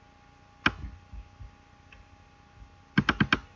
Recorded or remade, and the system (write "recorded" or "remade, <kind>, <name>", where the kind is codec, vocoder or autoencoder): recorded